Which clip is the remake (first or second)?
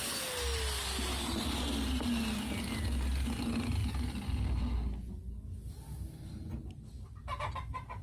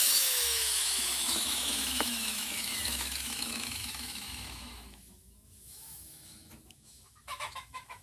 second